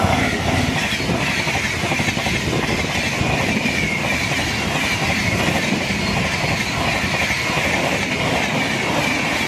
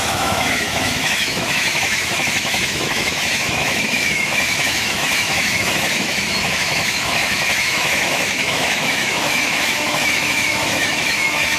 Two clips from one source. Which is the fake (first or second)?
second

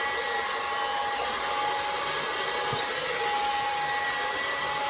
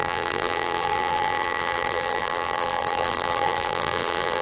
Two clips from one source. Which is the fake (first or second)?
second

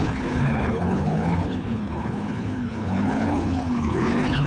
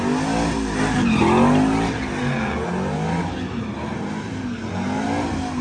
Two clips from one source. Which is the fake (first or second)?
first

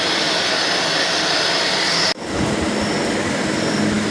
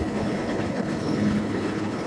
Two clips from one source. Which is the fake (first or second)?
second